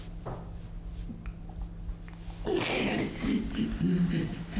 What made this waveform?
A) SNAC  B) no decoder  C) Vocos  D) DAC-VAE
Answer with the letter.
B